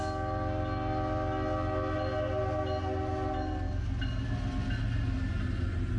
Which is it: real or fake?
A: real